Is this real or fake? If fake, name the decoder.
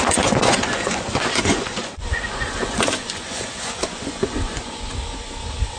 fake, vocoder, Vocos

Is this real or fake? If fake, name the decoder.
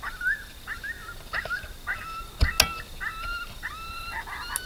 real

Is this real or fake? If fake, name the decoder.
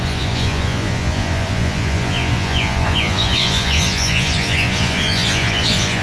fake, vocoder, Vocos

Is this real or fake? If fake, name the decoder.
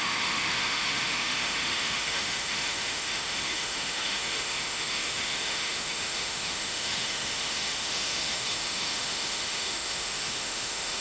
fake, autoencoder, DAC-VAE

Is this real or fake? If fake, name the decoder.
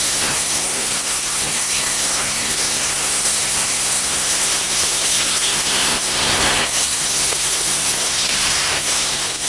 fake, codec, SNAC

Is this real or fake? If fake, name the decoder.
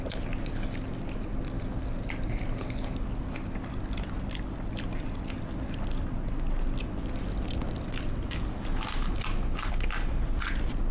real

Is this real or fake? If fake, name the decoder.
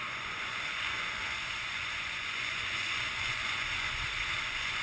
fake, vocoder, Vocos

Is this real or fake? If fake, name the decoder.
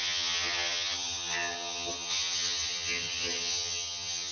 fake, vocoder, HiFi-GAN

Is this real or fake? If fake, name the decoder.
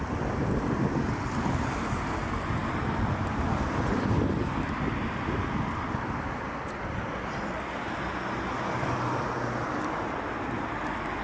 real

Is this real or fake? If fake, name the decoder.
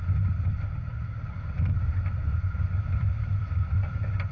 fake, vocoder, BigVGAN v2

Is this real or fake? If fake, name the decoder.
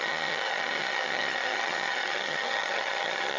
fake, vocoder, HiFi-GAN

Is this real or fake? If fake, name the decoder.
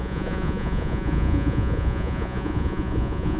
fake, vocoder, Vocos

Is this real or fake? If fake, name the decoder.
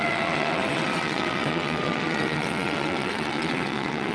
fake, vocoder, WaveNeXt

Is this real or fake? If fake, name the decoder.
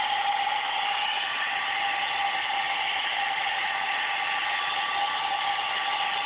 real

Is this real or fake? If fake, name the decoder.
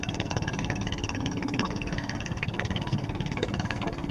fake, codec, SNAC